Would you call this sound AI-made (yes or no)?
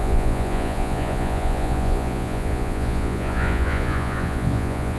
yes